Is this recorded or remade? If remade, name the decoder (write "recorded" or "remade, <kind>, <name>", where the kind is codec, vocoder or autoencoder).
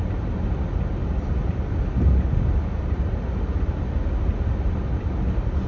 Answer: recorded